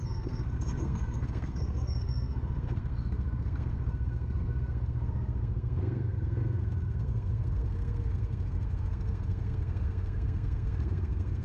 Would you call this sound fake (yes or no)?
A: yes